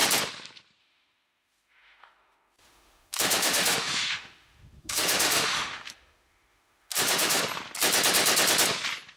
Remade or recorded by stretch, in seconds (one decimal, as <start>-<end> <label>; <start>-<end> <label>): 0.0-0.8 recorded; 0.8-7.4 remade; 7.4-9.2 recorded